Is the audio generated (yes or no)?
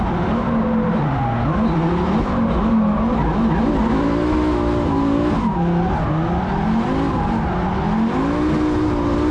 no